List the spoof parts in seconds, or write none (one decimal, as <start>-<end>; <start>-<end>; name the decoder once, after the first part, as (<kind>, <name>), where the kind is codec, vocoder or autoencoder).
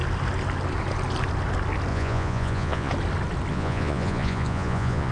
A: 1.9-2.9 (vocoder, Vocos); 3.5-5.1